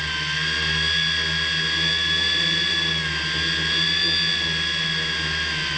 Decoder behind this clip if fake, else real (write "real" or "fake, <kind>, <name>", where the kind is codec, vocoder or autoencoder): real